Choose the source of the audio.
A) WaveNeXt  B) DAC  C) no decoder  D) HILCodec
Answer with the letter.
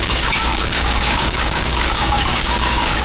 B